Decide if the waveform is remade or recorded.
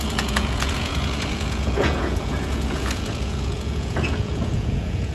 remade